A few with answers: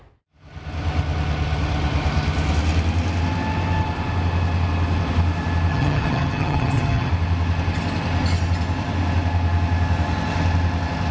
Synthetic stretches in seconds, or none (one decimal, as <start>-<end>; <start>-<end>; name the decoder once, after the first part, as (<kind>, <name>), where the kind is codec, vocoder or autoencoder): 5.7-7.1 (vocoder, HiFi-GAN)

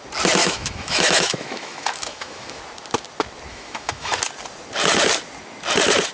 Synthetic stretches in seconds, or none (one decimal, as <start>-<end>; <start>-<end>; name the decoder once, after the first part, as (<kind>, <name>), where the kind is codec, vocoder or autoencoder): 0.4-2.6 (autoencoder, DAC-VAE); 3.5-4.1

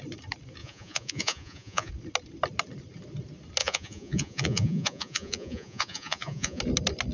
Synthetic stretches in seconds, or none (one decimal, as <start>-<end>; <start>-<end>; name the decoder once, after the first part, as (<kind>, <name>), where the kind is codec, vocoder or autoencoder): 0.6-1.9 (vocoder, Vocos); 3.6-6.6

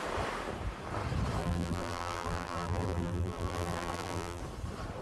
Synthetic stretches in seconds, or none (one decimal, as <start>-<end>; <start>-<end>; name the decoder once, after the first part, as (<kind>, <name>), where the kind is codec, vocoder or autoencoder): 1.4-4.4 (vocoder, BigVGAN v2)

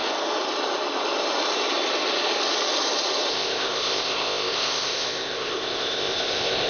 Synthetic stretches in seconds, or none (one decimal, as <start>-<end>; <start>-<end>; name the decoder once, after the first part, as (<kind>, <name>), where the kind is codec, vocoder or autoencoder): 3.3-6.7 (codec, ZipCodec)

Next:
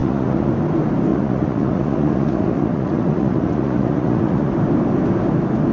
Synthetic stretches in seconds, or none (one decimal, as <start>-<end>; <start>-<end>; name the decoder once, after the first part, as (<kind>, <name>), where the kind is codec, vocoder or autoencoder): 0.0-0.5 (vocoder, Vocos); 1.1-4.5

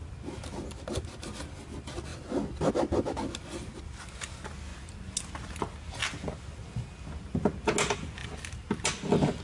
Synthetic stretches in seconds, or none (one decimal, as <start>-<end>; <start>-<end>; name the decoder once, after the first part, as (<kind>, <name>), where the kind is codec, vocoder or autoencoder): none

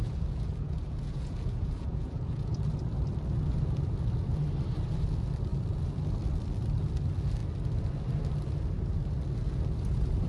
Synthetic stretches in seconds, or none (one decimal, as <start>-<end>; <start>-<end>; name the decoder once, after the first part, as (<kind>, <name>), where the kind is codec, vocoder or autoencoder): 0.0-2.6 (vocoder, Vocos)